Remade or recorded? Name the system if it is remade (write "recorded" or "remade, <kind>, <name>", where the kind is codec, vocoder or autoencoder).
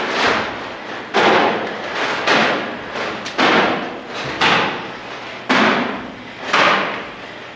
recorded